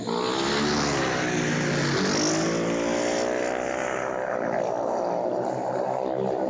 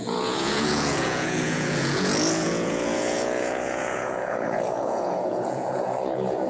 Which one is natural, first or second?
first